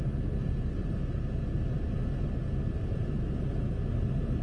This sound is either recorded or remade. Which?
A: recorded